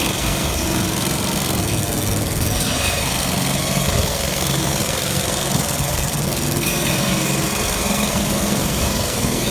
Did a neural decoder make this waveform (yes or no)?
yes